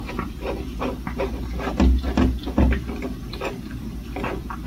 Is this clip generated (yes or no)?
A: no